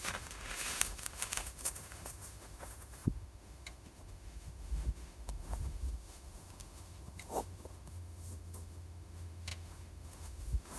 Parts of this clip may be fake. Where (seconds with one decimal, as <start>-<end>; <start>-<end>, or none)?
0.0-10.8